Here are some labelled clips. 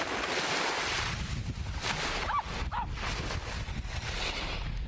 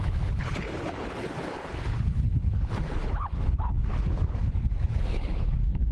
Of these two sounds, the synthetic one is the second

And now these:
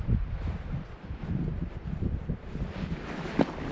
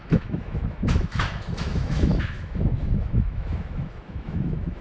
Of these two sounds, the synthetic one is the second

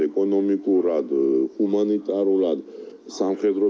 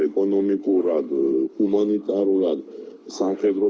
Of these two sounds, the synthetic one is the second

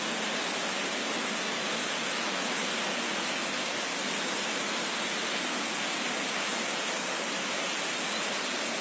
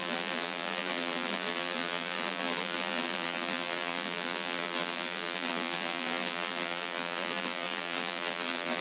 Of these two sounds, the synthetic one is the second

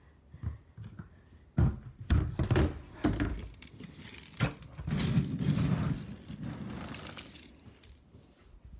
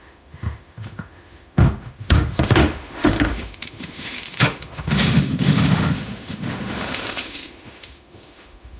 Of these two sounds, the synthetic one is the second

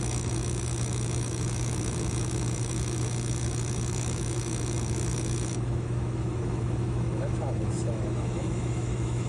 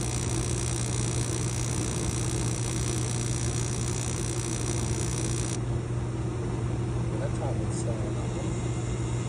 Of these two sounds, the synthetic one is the first